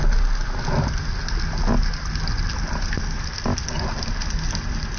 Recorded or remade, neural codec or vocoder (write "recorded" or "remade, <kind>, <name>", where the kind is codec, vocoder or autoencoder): recorded